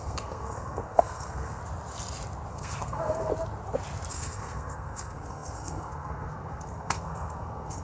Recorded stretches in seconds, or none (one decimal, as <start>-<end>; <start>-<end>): 1.6-2.5; 3.3-4.1